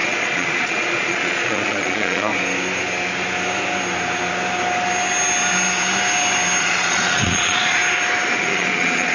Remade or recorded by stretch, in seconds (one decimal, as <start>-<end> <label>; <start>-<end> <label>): 0.0-2.3 remade; 2.3-6.6 recorded; 6.6-7.8 remade; 7.8-8.3 recorded; 8.3-9.1 remade